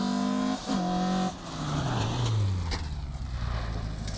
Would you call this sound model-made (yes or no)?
no